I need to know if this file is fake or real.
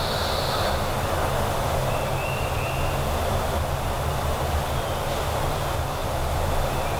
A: real